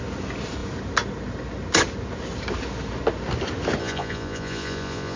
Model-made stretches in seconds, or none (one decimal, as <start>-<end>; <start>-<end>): 3.8-5.2